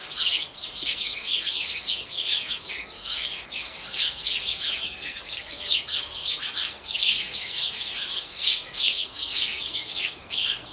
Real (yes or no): no